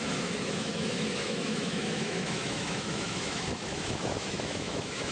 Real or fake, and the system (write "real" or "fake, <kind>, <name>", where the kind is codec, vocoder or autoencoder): fake, autoencoder, DAC-VAE